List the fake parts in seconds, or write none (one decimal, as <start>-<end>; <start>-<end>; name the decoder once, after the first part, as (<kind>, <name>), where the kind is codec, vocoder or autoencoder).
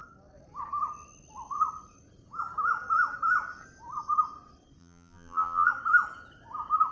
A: 4.8-5.7 (vocoder, BigVGAN v2)